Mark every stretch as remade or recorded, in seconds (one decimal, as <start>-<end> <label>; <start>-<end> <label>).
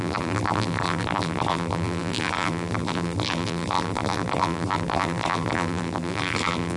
0.0-6.8 remade